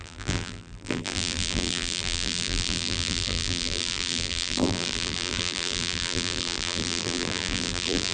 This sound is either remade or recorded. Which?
remade